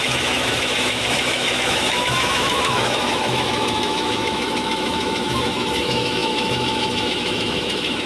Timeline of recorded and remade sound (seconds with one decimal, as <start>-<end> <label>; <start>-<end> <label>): 0.0-8.1 remade